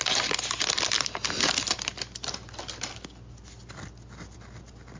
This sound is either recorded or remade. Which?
recorded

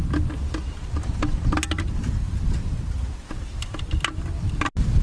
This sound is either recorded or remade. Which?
recorded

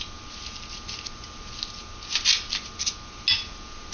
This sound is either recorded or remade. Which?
recorded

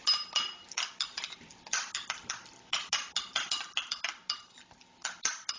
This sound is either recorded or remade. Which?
recorded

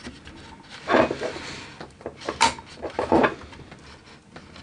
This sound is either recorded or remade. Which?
recorded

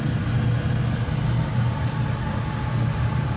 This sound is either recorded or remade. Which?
recorded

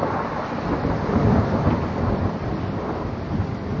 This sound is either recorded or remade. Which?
recorded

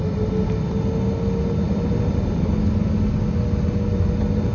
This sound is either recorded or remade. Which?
recorded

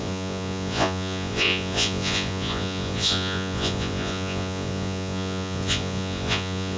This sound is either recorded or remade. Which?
remade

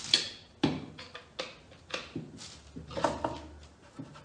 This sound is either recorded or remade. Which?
recorded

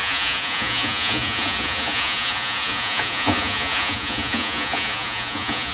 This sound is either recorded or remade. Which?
remade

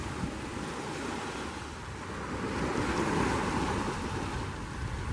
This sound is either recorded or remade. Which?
recorded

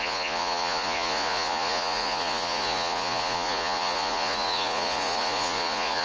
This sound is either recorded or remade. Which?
remade